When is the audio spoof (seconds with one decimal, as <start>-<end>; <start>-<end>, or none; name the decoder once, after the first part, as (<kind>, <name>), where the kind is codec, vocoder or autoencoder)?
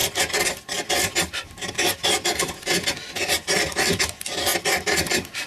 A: none